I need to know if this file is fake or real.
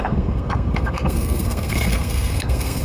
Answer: fake